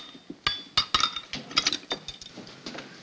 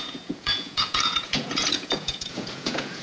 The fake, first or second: second